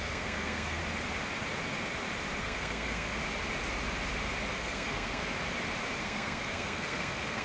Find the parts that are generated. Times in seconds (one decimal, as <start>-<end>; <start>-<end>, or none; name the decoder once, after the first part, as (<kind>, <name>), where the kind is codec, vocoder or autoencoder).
0.0-0.8 (codec, SNAC); 2.4-3.2; 4.6-5.2; 6.0-7.4

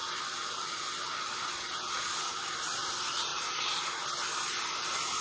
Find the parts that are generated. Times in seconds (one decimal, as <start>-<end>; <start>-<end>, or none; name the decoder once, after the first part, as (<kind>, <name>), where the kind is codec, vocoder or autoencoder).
3.3-3.9 (vocoder, BigVGAN v2)

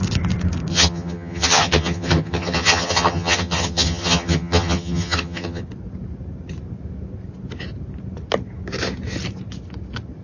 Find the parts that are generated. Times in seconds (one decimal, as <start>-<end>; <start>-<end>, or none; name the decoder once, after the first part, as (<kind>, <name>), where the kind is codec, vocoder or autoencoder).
0.7-5.6 (vocoder, HiFi-GAN)

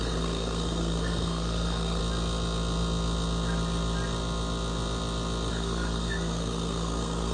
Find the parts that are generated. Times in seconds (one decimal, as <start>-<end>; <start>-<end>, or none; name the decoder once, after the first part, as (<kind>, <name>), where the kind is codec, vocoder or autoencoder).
0.0-2.0 (codec, SNAC); 5.5-7.3

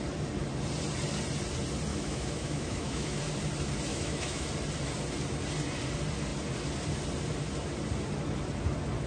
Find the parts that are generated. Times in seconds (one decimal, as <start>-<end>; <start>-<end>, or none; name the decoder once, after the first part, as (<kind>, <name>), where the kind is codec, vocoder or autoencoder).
1.9-3.2 (autoencoder, DAC-VAE); 3.9-4.5

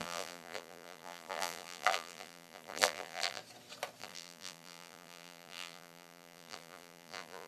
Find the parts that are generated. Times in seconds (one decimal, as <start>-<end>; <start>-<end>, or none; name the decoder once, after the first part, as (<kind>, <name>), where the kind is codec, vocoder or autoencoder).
0.0-3.4 (vocoder, BigVGAN v2); 4.0-7.5